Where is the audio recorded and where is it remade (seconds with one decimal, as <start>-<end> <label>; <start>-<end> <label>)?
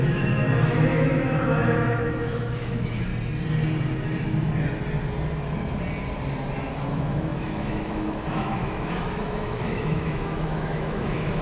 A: 0.0-3.1 remade; 3.1-6.7 recorded; 6.7-11.4 remade